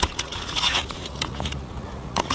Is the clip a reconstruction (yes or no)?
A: yes